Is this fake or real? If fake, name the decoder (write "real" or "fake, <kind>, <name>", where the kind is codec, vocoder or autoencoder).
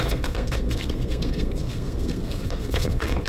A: fake, codec, SNAC